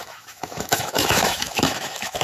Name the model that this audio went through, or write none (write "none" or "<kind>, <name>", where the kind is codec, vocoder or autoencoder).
autoencoder, DAC-VAE